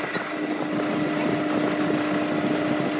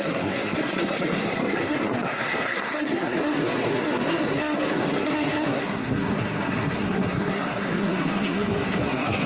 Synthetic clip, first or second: second